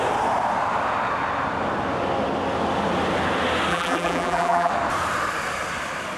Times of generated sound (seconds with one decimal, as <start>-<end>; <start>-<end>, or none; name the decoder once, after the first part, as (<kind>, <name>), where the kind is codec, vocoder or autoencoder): 3.7-4.7 (vocoder, BigVGAN v2)